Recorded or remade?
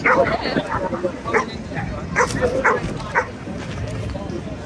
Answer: recorded